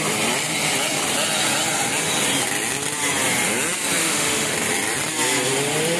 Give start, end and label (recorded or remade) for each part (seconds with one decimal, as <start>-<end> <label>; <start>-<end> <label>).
0.0-4.0 recorded; 4.0-4.5 remade; 4.5-6.0 recorded